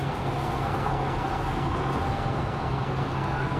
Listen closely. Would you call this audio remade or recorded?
remade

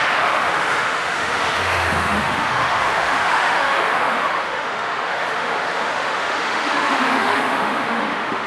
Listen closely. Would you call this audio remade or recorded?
remade